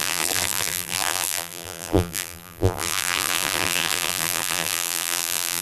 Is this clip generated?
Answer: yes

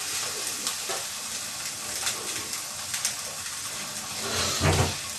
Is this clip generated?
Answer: no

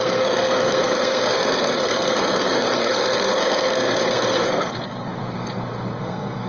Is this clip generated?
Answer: yes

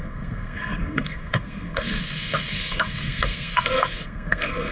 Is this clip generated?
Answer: yes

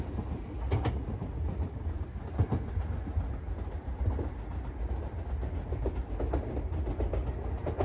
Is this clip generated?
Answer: no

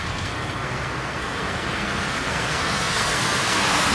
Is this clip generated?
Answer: yes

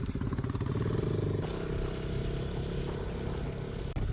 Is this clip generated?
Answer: no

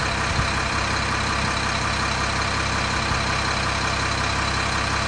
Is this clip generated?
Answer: no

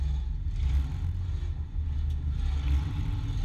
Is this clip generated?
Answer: no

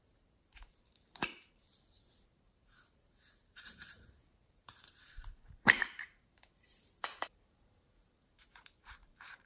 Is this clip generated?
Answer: yes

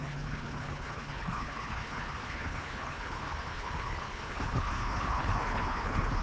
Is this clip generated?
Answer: yes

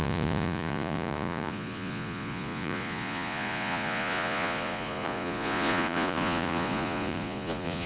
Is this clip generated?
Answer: yes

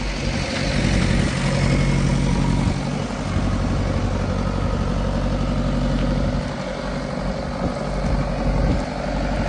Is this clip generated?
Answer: no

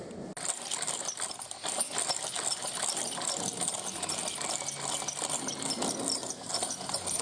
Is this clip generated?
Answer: no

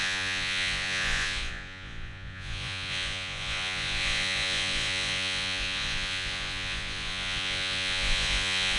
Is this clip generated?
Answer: yes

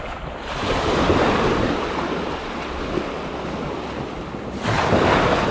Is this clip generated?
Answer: no